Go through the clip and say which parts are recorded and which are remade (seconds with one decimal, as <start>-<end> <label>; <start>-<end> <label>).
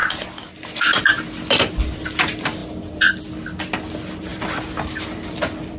0.0-2.6 recorded; 2.6-3.2 remade; 3.2-4.3 recorded; 4.3-5.8 remade